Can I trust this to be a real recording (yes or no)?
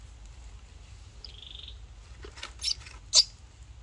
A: yes